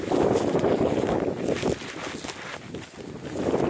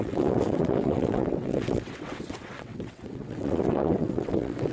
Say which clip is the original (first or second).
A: first